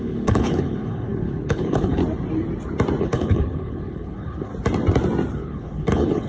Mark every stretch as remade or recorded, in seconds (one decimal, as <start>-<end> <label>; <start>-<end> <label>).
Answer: 0.0-2.0 remade; 2.0-3.0 recorded; 3.0-4.5 remade; 4.5-5.3 recorded; 5.3-6.3 remade